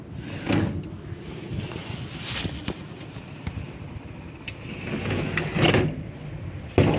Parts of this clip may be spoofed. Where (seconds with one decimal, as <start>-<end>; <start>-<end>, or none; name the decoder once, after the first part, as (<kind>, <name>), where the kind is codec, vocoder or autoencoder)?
1.8-4.9 (vocoder, BigVGAN v2)

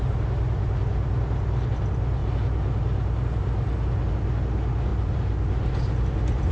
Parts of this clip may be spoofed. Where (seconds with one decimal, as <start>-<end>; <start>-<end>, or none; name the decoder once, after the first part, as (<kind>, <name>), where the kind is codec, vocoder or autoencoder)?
4.9-5.7 (vocoder, BigVGAN v2)